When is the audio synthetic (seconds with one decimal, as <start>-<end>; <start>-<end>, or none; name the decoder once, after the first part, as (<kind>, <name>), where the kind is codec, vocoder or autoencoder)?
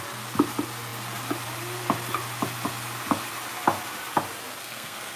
4.6-5.2 (codec, SNAC)